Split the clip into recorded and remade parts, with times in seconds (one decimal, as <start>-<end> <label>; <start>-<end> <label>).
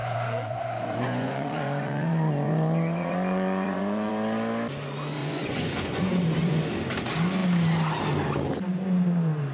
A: 0.0-4.1 remade; 4.1-5.2 recorded; 5.2-6.6 remade; 6.6-9.5 recorded